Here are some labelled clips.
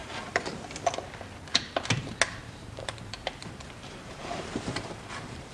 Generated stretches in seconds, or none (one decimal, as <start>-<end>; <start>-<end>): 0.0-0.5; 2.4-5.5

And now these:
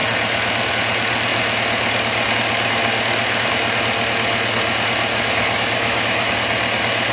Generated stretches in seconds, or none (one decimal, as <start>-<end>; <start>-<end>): 5.1-6.3

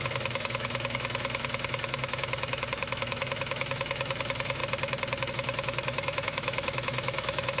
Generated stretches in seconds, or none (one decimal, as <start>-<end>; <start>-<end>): 0.0-4.6; 5.3-7.6